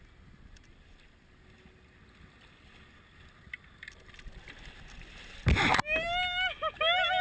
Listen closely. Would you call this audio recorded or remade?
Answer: recorded